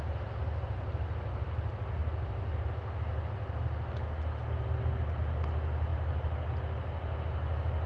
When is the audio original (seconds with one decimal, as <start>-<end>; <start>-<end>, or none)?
0.0-7.9